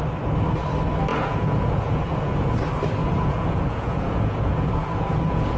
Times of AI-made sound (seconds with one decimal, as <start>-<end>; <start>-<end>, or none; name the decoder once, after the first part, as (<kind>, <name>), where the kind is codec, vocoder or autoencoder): 1.1-2.5 (vocoder, Vocos); 3.0-5.6